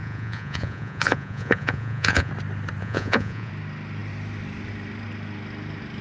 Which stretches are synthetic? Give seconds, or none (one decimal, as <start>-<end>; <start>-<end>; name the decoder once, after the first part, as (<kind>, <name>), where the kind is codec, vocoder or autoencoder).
0.0-2.3 (vocoder, Vocos); 2.8-3.5